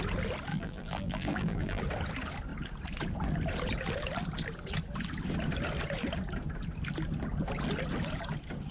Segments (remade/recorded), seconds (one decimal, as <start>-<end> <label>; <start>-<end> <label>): 0.0-0.5 recorded; 0.5-1.8 remade; 1.8-8.7 recorded